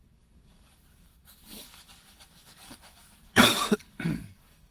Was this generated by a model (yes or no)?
yes